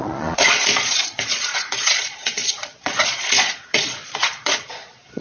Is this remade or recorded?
remade